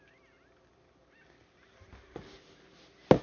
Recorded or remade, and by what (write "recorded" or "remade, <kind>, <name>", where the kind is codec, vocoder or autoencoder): recorded